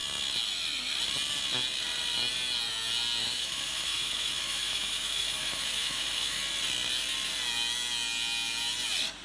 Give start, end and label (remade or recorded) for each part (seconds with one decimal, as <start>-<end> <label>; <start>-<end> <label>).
0.0-3.2 recorded; 3.2-6.4 remade; 6.4-9.2 recorded